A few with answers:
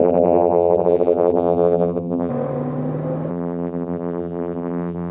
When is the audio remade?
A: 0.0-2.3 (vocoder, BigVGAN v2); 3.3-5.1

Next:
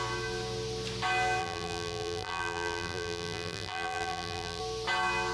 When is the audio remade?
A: 1.4-4.6 (vocoder, BigVGAN v2)

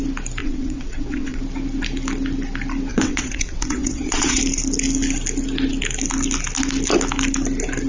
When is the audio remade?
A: 0.4-1.4 (vocoder, WaveNeXt); 2.9-4.4

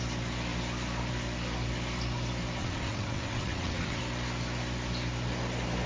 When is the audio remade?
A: 2.6-4.0 (vocoder, WaveNeXt)

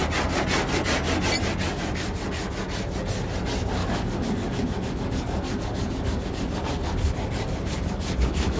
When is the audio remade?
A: 3.8-8.6 (codec, DAC)

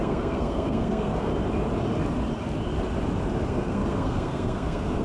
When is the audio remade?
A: 0.0-1.3 (codec, SNAC); 3.5-5.0